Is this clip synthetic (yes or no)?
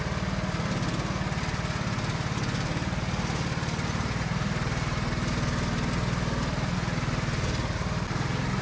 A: no